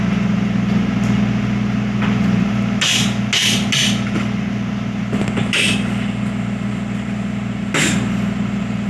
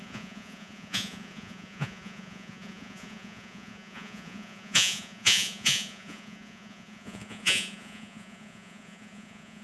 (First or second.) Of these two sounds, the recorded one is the first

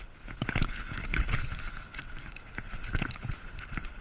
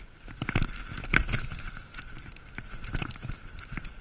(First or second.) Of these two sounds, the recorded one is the second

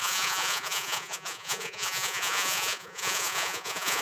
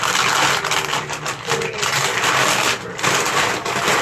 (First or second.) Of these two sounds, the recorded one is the second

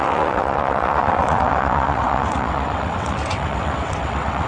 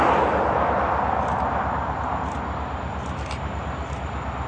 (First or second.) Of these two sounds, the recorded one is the second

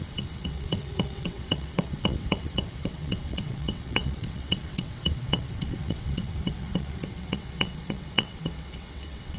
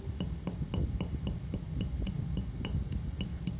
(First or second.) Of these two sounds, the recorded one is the second